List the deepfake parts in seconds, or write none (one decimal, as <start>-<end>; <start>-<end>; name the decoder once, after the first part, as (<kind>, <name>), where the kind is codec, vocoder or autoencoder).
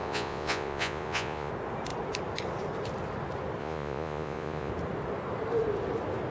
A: 0.0-1.5 (vocoder, Vocos); 3.6-4.7